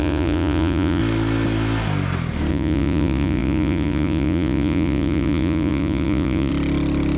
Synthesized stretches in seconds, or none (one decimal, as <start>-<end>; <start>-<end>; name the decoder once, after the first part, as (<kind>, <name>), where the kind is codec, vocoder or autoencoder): 0.0-1.0 (vocoder, Vocos); 2.5-6.5